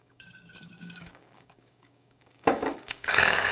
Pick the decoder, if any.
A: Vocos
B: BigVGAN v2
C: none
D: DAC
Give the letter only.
D